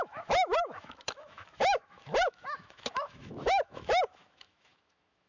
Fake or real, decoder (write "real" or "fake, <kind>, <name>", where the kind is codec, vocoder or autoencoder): fake, autoencoder, DAC-VAE